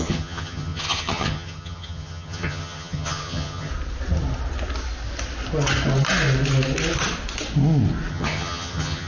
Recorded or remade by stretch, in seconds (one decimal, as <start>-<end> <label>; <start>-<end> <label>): 0.0-3.7 remade; 3.7-8.1 recorded; 8.1-9.1 remade